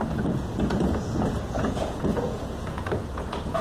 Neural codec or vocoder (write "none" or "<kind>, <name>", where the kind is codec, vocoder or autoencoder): vocoder, Vocos